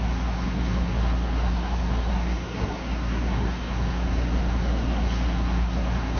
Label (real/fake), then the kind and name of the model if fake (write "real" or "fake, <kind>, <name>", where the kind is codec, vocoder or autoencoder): fake, codec, SNAC